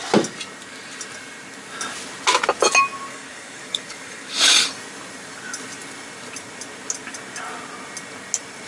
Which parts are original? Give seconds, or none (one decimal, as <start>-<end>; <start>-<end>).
0.0-3.1; 4.6-8.7